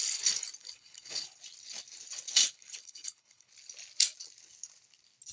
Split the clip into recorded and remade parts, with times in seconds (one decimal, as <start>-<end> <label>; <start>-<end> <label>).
0.0-0.6 recorded; 0.6-1.4 remade; 1.4-2.4 recorded; 2.4-3.5 remade; 3.5-5.3 recorded